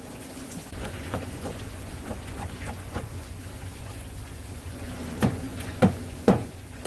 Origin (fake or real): fake